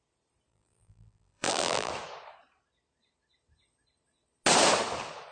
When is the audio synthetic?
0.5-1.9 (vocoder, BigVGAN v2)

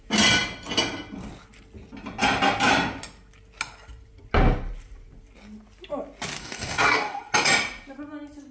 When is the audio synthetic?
6.4-7.2 (codec, DAC)

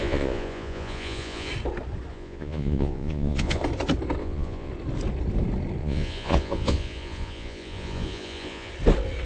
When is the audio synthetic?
0.0-1.5 (vocoder, Vocos); 2.1-3.6; 4.2-4.7; 5.8-8.7

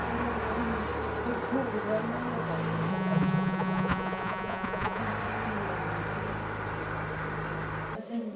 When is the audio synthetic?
2.9-5.0 (vocoder, Vocos)

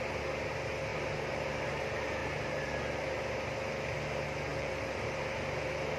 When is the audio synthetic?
0.9-1.8 (vocoder, BigVGAN v2); 2.2-2.8; 4.5-5.2

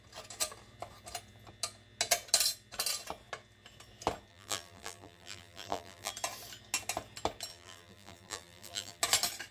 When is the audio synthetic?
4.3-6.1 (vocoder, BigVGAN v2); 7.5-9.0

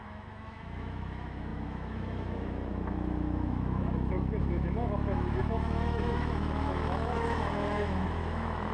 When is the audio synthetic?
0.0-8.7 (autoencoder, DAC-VAE)

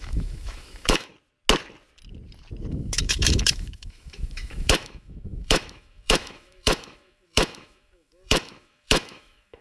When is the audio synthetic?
0.0-1.1 (autoencoder, DAC-VAE); 2.7-9.6